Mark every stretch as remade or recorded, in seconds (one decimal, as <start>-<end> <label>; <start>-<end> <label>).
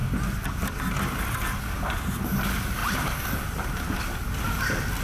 0.0-2.8 recorded; 2.8-4.0 remade; 4.0-5.0 recorded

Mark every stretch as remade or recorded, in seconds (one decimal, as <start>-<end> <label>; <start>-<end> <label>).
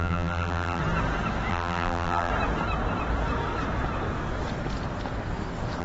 0.0-0.8 remade; 0.8-1.5 recorded; 1.5-2.3 remade; 2.3-5.8 recorded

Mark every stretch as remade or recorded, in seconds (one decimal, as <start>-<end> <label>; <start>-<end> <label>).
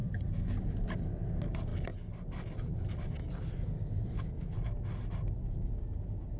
0.0-0.6 remade; 0.6-6.4 recorded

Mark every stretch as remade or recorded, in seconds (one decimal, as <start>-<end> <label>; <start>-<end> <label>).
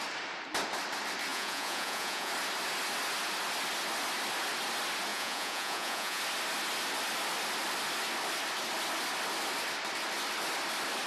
0.0-1.3 recorded; 1.3-2.3 remade; 2.3-5.1 recorded; 5.1-6.2 remade; 6.2-11.1 recorded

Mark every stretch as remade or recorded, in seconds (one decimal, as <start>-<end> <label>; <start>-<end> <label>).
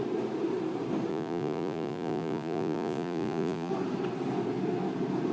0.0-1.1 recorded; 1.1-3.7 remade; 3.7-5.3 recorded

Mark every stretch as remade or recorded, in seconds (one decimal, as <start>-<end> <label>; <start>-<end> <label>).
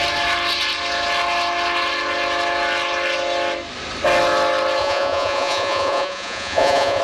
0.0-4.8 recorded; 4.8-7.0 remade